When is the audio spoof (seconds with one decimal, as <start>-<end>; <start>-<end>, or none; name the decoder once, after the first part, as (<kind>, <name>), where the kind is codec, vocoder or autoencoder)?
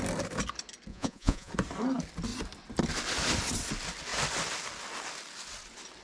0.9-1.5 (vocoder, Vocos)